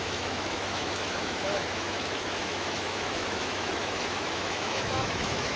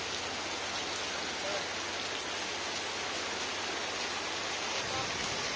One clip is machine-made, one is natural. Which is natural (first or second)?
second